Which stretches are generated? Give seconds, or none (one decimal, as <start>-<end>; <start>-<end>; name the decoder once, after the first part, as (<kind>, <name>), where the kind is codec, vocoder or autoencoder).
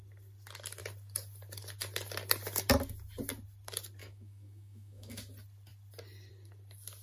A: 4.0-5.2 (autoencoder, DAC-VAE)